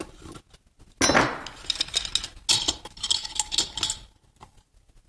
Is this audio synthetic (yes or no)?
no